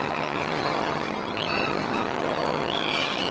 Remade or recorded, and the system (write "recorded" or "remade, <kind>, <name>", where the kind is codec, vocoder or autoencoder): remade, vocoder, HiFi-GAN